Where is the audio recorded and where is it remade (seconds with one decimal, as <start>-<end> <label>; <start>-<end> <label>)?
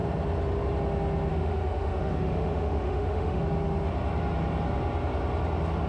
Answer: 0.0-1.3 recorded; 1.3-3.4 remade; 3.4-5.9 recorded